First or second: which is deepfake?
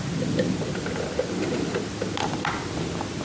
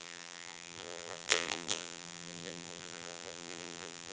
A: second